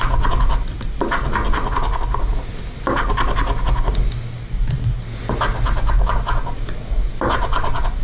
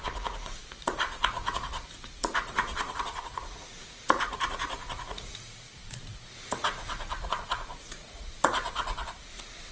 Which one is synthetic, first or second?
second